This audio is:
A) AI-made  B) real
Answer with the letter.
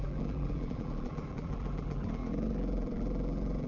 A